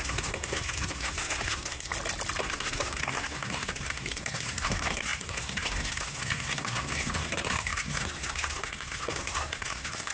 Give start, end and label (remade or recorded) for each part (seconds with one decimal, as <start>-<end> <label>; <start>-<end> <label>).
0.0-1.9 remade; 1.9-2.4 recorded; 2.4-10.1 remade